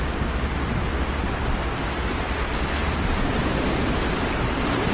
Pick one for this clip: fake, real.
real